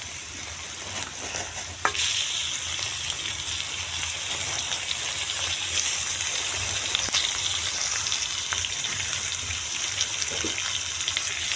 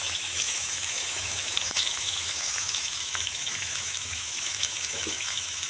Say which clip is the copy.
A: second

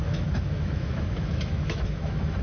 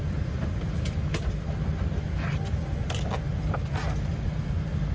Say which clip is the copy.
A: first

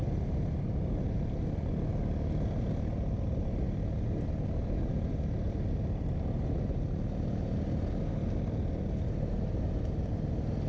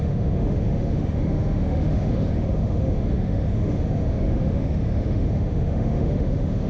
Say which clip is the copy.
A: second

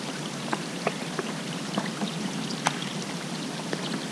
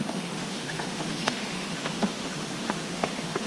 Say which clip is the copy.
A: second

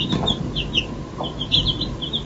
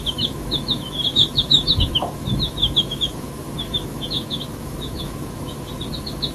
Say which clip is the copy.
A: second